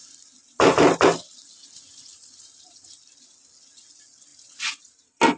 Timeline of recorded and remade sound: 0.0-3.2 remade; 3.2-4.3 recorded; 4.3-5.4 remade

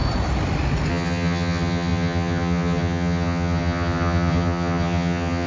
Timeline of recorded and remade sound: 0.0-0.9 recorded; 0.9-5.5 remade